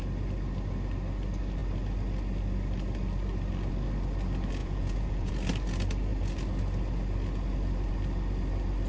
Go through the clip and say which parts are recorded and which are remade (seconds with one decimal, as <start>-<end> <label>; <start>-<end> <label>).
0.0-4.6 recorded; 4.6-5.3 remade; 5.3-8.9 recorded